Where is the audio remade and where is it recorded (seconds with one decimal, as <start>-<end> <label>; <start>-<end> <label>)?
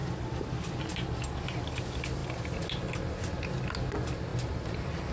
0.0-5.1 recorded